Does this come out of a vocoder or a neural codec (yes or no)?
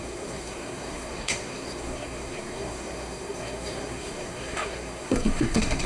yes